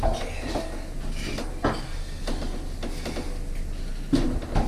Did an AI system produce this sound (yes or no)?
no